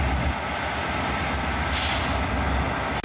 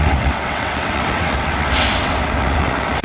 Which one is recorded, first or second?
first